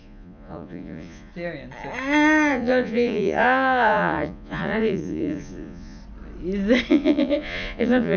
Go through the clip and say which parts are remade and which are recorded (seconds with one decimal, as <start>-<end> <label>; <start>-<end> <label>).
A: 0.0-1.3 remade; 1.3-2.5 recorded; 2.5-6.0 remade; 6.0-6.9 recorded; 6.9-8.2 remade

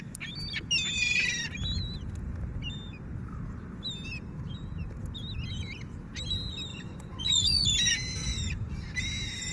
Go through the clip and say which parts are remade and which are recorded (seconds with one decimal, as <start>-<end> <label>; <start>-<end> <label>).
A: 0.0-6.7 recorded; 6.7-7.7 remade; 7.7-8.2 recorded; 8.2-8.8 remade; 8.8-9.5 recorded

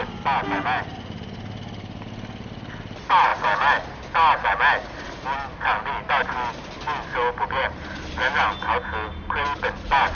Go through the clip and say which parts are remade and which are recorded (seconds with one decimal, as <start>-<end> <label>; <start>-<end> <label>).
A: 0.0-10.1 recorded

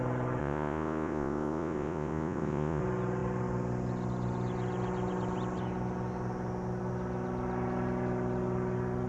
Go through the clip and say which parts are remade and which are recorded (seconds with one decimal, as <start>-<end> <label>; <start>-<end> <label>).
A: 0.0-0.4 recorded; 0.4-2.8 remade; 2.8-9.1 recorded

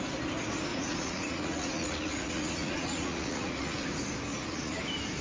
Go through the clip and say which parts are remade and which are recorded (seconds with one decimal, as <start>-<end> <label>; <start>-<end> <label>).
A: 0.0-0.7 recorded; 0.7-3.8 remade; 3.8-4.3 recorded; 4.3-4.8 remade; 4.8-5.2 recorded

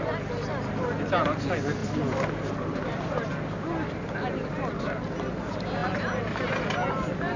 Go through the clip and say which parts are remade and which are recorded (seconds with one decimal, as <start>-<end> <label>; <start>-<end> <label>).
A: 0.0-7.4 recorded

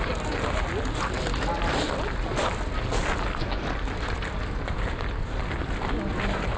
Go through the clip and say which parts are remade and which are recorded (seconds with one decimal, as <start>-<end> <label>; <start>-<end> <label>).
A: 0.0-6.6 recorded

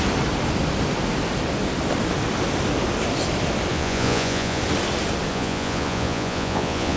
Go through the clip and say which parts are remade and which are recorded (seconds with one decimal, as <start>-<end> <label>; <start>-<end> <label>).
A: 0.0-3.7 recorded; 3.7-4.6 remade; 4.6-5.3 recorded; 5.3-7.0 remade